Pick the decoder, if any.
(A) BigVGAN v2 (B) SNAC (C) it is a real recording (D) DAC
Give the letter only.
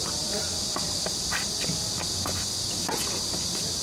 C